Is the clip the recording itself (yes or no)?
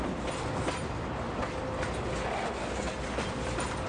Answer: yes